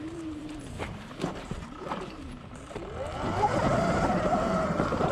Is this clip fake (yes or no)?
yes